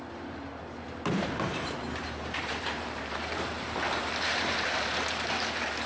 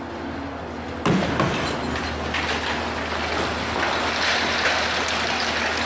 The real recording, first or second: second